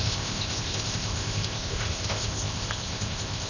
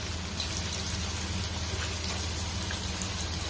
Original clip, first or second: second